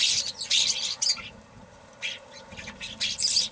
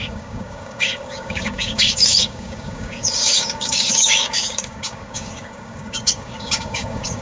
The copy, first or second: second